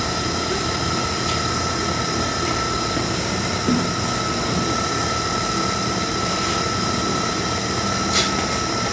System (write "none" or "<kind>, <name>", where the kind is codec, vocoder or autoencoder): none